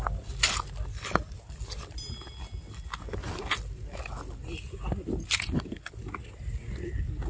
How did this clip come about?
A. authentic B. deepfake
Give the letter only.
A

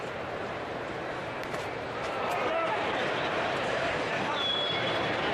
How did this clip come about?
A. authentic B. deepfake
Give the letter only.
B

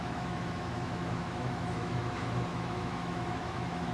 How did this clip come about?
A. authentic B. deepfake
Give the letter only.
B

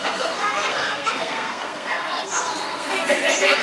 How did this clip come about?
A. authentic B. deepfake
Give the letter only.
B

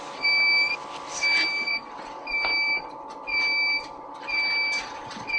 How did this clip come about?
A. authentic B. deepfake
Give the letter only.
A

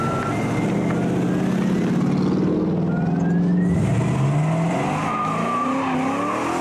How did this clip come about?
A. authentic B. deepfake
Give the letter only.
A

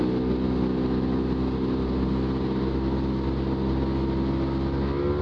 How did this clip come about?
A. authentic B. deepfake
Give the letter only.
A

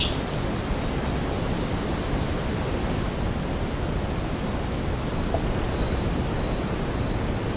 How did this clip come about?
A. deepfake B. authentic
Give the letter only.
B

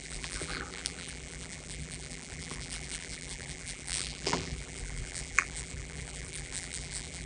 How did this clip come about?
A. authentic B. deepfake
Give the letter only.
B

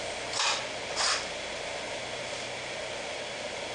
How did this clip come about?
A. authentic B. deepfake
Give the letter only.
A